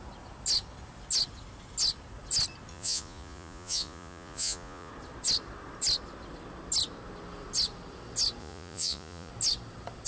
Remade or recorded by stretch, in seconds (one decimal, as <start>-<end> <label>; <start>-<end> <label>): 0.0-2.7 recorded; 2.7-4.9 remade; 4.9-8.4 recorded; 8.4-9.3 remade; 9.3-10.1 recorded